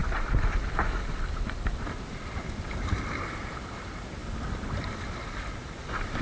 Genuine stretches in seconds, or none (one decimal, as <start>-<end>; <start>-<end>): 0.0-6.2